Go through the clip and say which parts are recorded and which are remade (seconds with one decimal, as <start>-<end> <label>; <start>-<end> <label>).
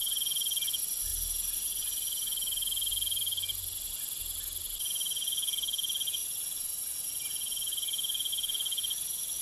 0.0-9.4 recorded